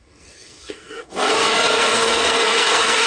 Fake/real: fake